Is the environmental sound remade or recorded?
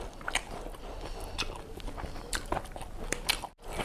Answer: recorded